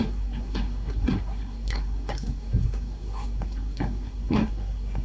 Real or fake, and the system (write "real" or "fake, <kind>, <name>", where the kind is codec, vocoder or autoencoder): fake, codec, SNAC